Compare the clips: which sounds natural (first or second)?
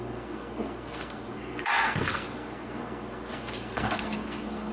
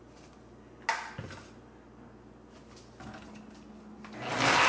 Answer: second